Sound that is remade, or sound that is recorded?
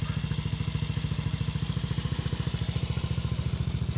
recorded